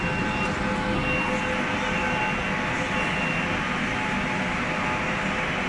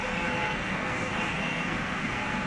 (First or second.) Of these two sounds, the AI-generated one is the second